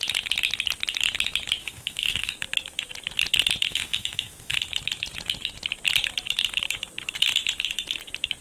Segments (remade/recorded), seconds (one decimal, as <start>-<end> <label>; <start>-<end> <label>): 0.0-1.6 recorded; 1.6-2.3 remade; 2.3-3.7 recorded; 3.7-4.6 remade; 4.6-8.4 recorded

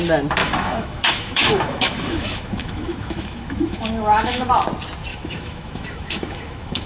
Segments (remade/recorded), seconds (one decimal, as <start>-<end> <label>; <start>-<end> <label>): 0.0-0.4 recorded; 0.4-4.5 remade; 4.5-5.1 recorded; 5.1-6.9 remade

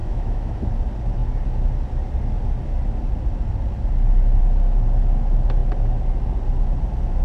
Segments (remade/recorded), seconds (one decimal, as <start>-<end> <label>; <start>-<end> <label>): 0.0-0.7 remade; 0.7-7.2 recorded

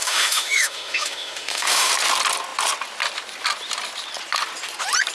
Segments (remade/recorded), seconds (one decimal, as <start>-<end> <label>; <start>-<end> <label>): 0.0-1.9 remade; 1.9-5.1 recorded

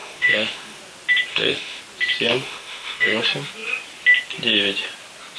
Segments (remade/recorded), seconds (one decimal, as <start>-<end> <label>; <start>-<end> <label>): 0.0-0.8 remade; 0.8-1.3 recorded; 1.3-1.8 remade; 1.8-2.3 recorded; 2.3-3.2 remade; 3.2-5.4 recorded